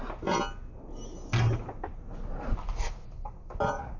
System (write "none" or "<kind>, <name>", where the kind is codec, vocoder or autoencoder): none